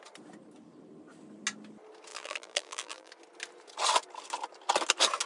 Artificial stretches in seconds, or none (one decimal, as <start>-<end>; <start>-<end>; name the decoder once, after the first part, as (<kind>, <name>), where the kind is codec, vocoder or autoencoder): 2.1-3.1 (vocoder, BigVGAN v2)